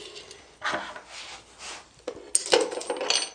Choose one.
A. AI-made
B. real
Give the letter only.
B